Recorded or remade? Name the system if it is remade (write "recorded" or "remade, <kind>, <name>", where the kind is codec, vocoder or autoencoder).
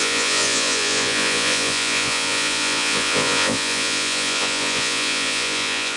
remade, vocoder, Vocos